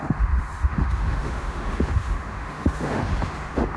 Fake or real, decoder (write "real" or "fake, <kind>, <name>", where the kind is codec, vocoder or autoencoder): fake, autoencoder, DAC-VAE